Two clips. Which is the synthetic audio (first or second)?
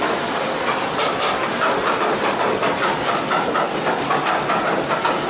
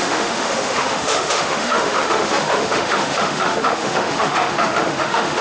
second